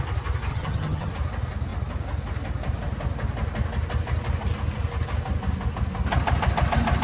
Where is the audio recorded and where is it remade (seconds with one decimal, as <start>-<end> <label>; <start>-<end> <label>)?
0.0-0.5 recorded; 0.5-1.1 remade; 1.1-7.0 recorded